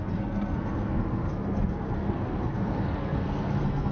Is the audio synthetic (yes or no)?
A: yes